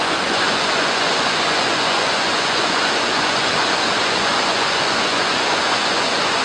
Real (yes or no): no